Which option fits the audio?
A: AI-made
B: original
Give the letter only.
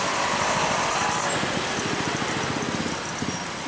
B